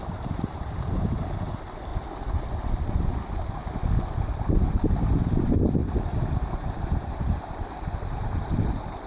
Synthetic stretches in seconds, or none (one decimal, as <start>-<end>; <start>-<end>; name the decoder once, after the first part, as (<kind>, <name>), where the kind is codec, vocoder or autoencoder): 0.0-1.9 (vocoder, BigVGAN v2); 2.7-3.6; 4.2-5.8; 6.8-9.1